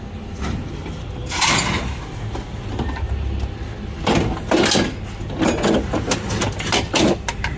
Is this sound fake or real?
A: real